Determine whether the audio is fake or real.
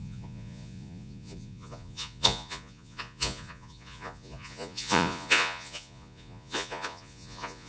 fake